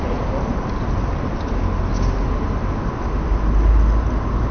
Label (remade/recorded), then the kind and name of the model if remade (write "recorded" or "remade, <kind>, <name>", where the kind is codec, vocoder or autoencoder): recorded